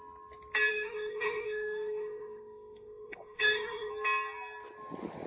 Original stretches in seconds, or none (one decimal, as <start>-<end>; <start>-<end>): 0.0-0.7; 3.9-5.3